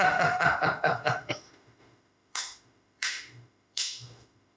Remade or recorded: remade